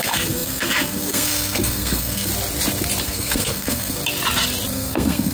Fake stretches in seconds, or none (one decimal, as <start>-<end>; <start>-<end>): 0.0-2.3; 3.0-4.0; 4.7-5.3